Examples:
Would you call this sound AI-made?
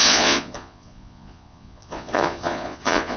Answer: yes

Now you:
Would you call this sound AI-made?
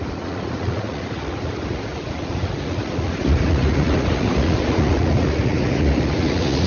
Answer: yes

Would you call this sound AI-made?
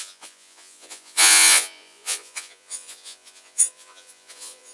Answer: yes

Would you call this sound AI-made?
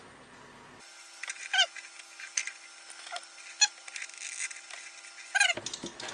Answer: no